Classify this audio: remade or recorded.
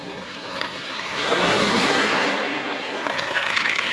remade